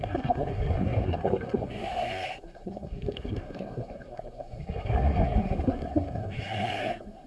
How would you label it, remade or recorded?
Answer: remade